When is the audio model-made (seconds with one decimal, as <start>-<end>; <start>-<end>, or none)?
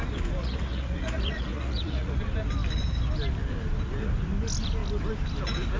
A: 0.4-2.2